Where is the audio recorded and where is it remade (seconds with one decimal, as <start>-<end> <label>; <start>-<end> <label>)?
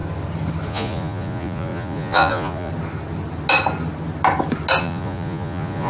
0.0-0.7 recorded; 0.7-2.7 remade; 2.7-4.8 recorded; 4.8-5.9 remade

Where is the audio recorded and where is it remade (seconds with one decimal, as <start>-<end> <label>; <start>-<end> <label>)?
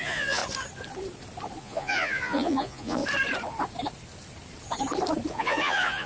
0.0-0.4 remade; 0.4-1.6 recorded; 1.6-3.0 remade; 3.0-5.3 recorded; 5.3-6.1 remade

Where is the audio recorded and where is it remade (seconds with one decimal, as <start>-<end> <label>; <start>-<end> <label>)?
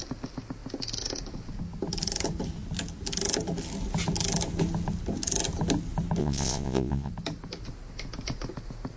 0.0-6.2 recorded; 6.2-7.1 remade; 7.1-9.0 recorded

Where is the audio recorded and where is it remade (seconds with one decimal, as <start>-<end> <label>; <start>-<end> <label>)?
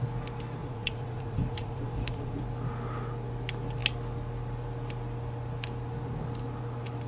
0.0-0.6 recorded; 0.6-2.4 remade; 2.4-7.1 recorded